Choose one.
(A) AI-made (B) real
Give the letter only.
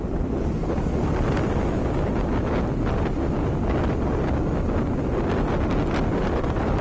B